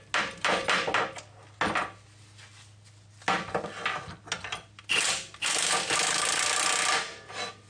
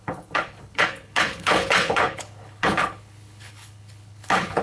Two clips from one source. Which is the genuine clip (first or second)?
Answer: first